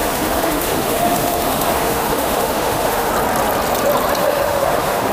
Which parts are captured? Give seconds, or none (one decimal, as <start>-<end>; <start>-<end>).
3.1-4.2